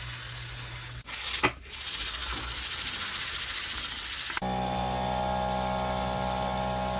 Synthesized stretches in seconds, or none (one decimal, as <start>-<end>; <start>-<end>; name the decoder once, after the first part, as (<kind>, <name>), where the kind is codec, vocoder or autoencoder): none